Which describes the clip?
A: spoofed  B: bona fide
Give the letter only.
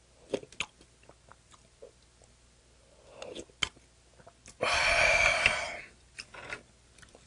B